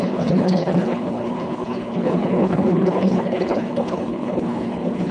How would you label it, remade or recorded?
remade